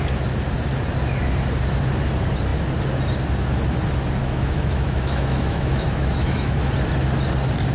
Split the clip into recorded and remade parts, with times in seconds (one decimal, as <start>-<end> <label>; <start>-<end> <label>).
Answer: 0.0-4.2 recorded; 4.2-6.7 remade; 6.7-7.7 recorded